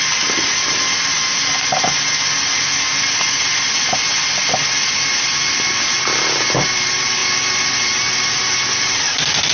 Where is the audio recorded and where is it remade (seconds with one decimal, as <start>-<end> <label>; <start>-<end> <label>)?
0.0-9.5 recorded